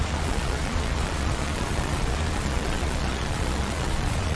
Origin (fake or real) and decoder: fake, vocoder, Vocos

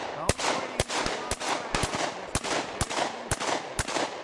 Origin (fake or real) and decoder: real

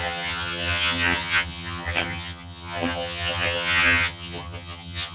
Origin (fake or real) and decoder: fake, vocoder, HiFi-GAN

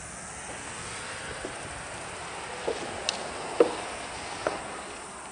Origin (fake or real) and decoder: real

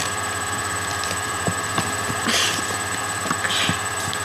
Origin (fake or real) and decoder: fake, vocoder, BigVGAN v2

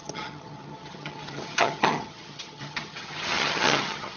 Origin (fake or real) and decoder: fake, vocoder, HiFi-GAN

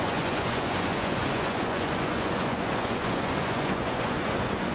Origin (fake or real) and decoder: fake, vocoder, Vocos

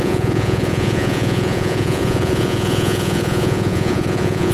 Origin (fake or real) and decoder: fake, vocoder, Vocos